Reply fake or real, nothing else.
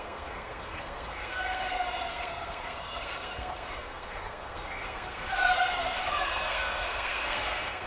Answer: fake